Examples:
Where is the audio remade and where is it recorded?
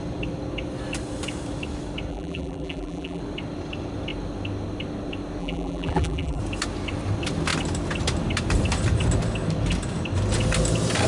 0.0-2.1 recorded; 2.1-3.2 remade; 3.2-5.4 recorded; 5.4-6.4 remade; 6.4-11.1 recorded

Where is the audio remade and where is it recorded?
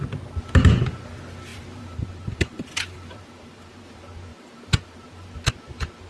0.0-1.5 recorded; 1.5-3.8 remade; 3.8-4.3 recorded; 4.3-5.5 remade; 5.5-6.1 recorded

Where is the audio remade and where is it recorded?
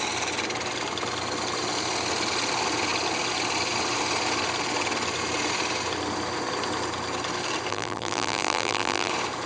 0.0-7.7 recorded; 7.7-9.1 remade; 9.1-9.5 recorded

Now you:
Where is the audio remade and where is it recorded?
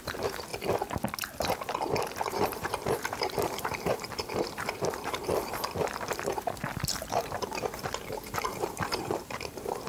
0.0-0.5 remade; 0.5-2.3 recorded; 2.3-9.9 remade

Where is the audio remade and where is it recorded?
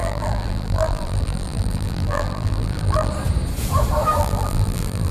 0.0-3.1 remade; 3.1-4.2 recorded; 4.2-5.1 remade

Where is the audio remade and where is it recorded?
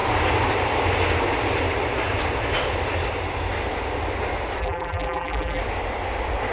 0.0-4.6 recorded; 4.6-5.6 remade; 5.6-6.5 recorded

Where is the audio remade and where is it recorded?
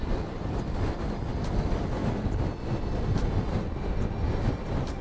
0.0-5.0 recorded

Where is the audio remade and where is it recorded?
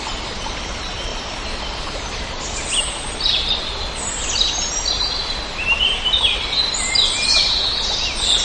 0.0-8.4 recorded